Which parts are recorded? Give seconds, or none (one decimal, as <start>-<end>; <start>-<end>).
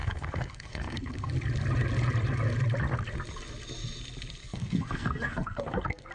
1.3-4.4